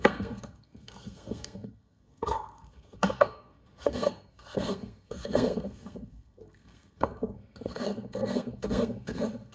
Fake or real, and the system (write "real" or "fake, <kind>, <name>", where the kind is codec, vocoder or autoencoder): fake, codec, SNAC